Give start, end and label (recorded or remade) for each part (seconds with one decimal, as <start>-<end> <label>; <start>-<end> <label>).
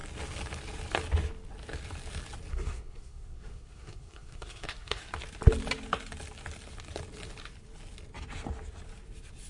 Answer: 0.0-2.5 recorded; 2.5-5.0 remade; 5.0-9.5 recorded